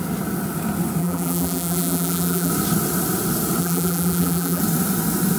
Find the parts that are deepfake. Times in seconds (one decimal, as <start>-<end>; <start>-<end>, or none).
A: 1.0-2.5; 3.6-4.6